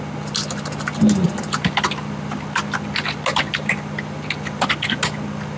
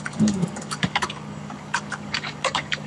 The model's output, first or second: second